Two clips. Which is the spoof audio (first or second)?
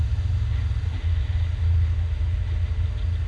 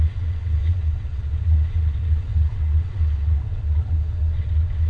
second